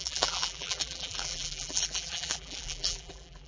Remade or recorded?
remade